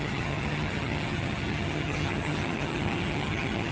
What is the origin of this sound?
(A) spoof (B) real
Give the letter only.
A